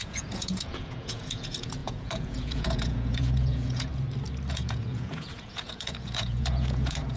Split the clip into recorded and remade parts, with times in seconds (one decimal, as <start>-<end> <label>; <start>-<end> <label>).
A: 0.0-3.9 remade; 3.9-4.5 recorded; 4.5-7.2 remade